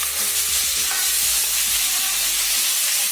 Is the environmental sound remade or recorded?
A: remade